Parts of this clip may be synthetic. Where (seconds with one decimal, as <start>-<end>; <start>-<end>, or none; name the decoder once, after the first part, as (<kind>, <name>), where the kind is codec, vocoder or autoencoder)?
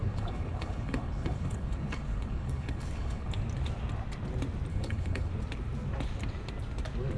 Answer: 0.0-3.3 (codec, HILCodec); 4.7-5.3